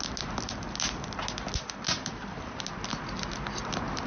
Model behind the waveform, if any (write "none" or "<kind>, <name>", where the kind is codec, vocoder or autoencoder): none